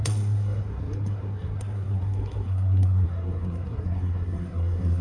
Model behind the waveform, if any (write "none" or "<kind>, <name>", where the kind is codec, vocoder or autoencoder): codec, SNAC